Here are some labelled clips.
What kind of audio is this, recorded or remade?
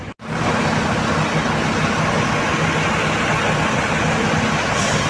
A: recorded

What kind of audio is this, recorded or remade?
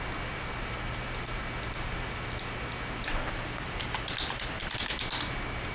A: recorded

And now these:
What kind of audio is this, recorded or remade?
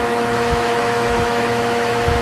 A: remade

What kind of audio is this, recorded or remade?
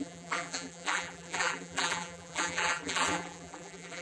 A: remade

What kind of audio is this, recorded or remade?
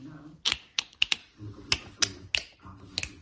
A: recorded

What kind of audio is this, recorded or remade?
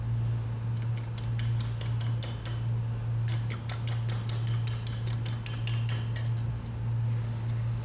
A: recorded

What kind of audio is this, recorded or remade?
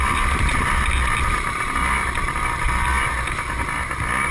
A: recorded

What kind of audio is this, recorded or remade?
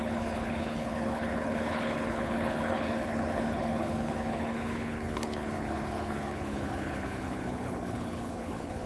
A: remade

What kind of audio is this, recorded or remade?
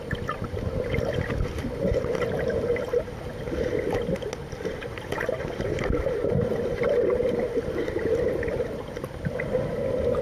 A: recorded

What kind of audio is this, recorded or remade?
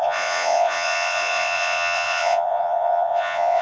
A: remade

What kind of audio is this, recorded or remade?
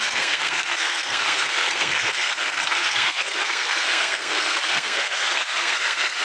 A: remade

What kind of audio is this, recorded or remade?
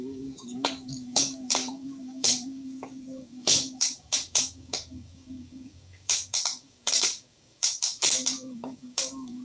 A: remade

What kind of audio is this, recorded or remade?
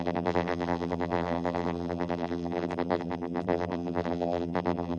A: remade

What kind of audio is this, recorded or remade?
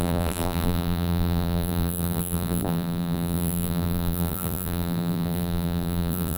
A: remade